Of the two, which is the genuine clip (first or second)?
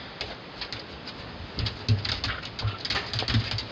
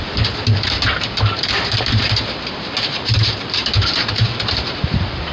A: first